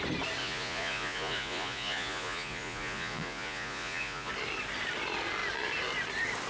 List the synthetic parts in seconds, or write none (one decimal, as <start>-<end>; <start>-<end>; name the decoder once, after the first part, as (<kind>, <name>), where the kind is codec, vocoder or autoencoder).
0.4-4.3 (vocoder, Vocos)